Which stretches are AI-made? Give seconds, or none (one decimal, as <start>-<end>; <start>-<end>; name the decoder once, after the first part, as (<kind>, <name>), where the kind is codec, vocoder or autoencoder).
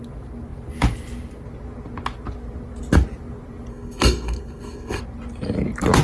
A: 3.7-5.0 (codec, SNAC)